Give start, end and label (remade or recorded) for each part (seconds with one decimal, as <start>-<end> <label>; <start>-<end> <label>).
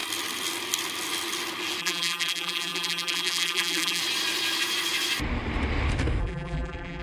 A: 0.0-1.8 recorded; 1.8-4.0 remade; 4.0-6.2 recorded; 6.2-7.0 remade